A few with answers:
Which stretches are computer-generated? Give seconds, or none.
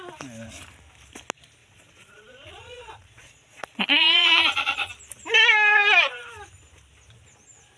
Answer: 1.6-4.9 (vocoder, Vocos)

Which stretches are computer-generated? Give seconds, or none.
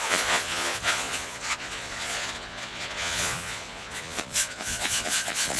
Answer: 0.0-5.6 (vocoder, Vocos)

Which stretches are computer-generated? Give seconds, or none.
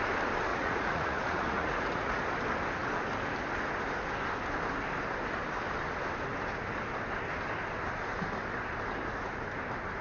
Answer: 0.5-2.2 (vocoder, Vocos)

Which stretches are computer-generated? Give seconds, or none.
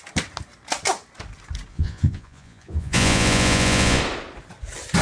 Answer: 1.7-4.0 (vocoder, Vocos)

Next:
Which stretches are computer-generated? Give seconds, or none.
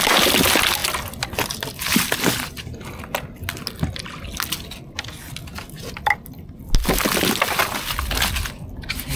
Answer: none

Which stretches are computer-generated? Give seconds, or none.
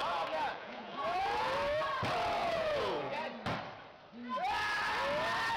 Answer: 0.0-1.5 (vocoder, Vocos); 2.4-3.2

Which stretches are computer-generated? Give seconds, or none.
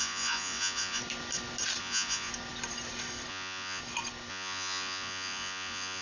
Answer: 0.0-1.0 (vocoder, Vocos); 1.8-2.3; 3.3-3.8; 4.3-6.0